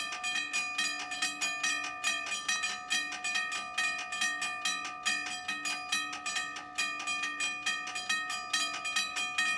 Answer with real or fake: real